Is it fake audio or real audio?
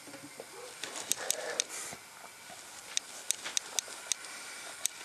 real